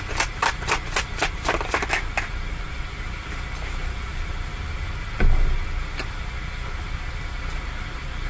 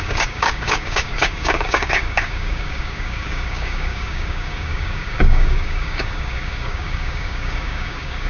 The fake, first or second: second